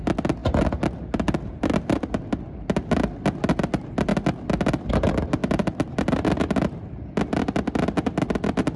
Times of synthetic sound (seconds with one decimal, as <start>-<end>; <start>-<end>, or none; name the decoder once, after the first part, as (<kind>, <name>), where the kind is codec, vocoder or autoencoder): none